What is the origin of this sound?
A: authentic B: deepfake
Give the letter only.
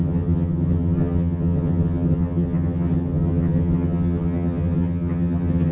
B